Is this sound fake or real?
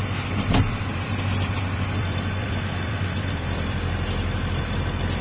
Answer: fake